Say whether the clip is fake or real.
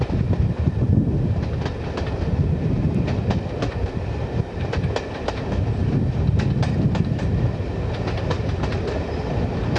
real